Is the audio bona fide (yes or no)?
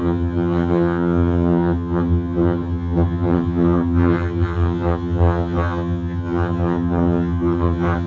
no